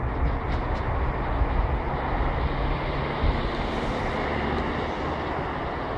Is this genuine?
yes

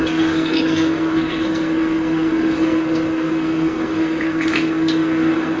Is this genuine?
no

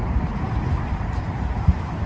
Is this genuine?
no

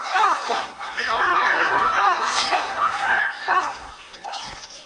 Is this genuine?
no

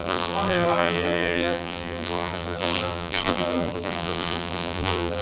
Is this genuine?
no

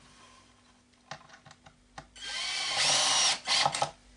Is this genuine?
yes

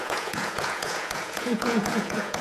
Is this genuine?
no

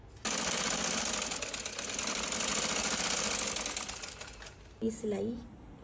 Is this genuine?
yes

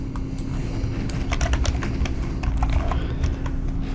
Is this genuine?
yes